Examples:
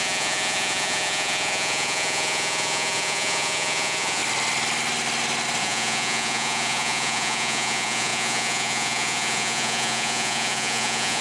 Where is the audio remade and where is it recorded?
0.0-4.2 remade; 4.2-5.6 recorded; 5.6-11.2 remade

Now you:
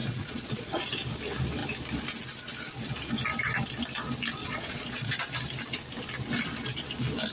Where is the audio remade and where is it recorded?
0.0-0.8 remade; 0.8-4.4 recorded; 4.4-5.2 remade; 5.2-7.3 recorded